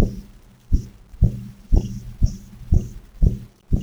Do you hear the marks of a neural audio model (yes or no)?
yes